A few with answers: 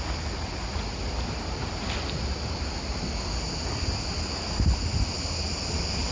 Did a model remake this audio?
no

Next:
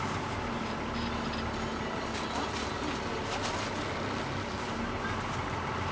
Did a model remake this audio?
no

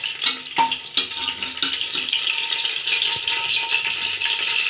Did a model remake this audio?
no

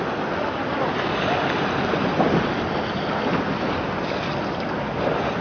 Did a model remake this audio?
no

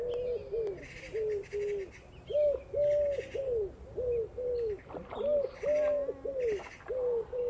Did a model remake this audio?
no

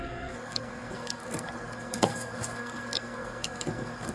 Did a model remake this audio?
yes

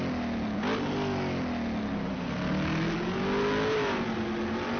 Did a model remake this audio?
no